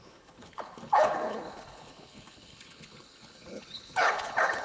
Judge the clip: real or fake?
fake